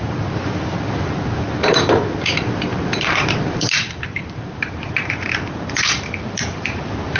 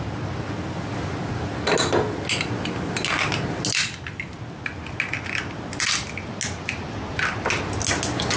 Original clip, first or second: second